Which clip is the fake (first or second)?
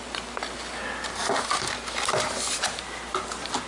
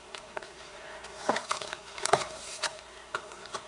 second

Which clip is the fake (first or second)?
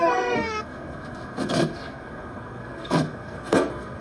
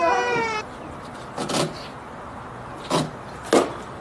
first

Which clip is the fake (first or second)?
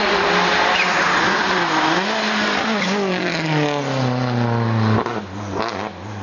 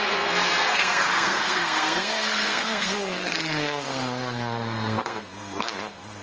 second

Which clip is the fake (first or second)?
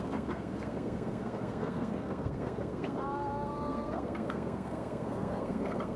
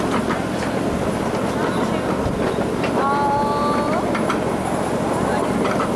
first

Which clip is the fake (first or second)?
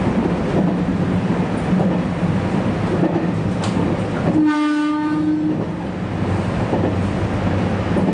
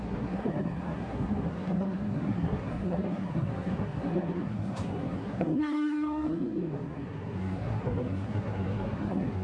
second